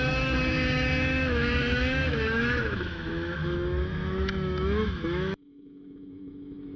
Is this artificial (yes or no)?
yes